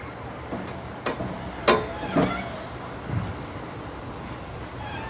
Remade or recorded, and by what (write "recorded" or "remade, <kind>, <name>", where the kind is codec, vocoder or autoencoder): recorded